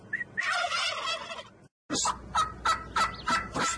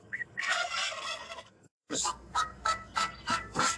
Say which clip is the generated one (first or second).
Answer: second